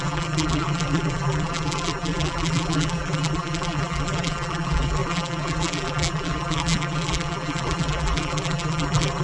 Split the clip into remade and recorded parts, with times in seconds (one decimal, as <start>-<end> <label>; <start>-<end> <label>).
0.0-9.2 remade